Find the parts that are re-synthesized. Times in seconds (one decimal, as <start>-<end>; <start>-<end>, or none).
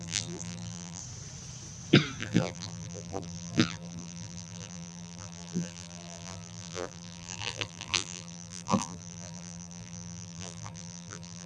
0.0-1.0; 2.2-11.5